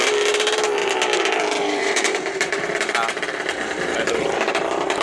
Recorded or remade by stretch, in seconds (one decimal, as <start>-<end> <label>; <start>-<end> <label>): 0.0-1.8 recorded; 1.8-2.5 remade; 2.5-5.0 recorded